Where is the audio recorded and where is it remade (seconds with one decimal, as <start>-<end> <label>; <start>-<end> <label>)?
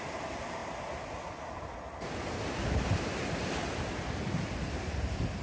0.0-5.4 recorded